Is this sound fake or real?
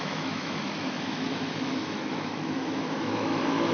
fake